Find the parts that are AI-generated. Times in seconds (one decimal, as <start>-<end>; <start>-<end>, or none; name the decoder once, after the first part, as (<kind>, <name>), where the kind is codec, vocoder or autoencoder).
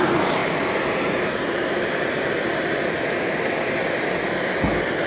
0.4-3.5 (vocoder, BigVGAN v2)